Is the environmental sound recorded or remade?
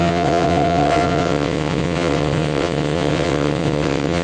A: remade